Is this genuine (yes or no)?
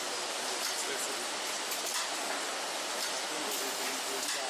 yes